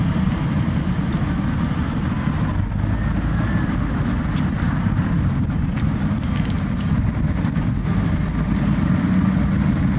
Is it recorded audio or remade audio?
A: recorded